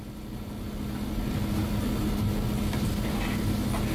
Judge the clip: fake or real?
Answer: real